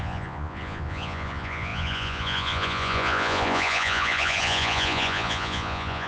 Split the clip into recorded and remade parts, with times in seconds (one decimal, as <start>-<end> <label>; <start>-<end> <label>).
0.0-6.1 remade